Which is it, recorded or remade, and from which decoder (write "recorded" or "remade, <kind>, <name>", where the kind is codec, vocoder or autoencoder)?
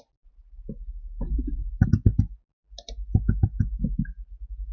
recorded